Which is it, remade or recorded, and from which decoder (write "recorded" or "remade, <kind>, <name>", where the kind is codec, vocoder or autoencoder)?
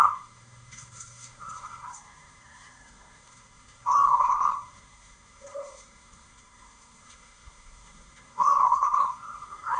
remade, codec, SNAC